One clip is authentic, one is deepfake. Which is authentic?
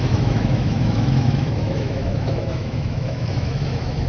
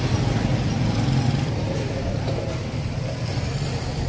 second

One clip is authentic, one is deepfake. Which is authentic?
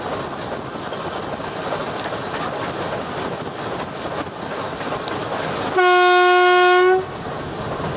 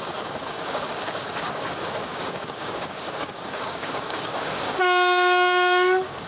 first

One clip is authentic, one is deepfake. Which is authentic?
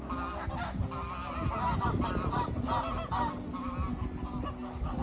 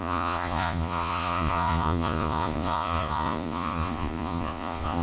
first